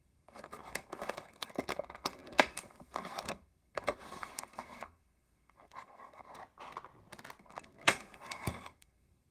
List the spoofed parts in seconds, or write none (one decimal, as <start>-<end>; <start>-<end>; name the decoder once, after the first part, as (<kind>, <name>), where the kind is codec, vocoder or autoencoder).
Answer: 0.0-6.4 (codec, SNAC); 7.4-9.3